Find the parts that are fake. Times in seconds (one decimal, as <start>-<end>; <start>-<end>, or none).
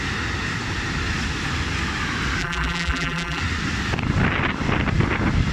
2.4-3.4